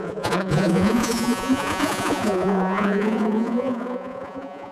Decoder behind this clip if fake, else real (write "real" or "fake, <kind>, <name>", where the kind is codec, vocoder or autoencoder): fake, vocoder, Vocos